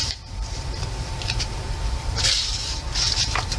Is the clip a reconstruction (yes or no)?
yes